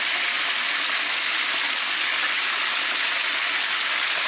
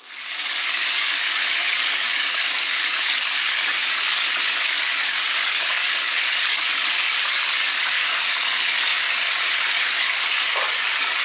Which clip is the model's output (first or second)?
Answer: second